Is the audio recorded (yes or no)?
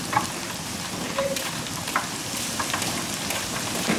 yes